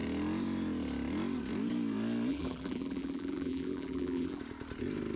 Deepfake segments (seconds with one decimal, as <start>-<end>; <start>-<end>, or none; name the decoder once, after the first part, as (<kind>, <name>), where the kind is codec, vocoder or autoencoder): 2.3-4.4 (vocoder, BigVGAN v2)